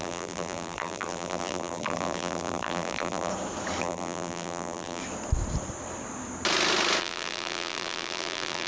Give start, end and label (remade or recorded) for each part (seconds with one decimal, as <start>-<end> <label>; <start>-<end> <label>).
0.0-3.3 remade; 3.3-3.8 recorded; 3.8-5.0 remade; 5.0-7.0 recorded; 7.0-8.7 remade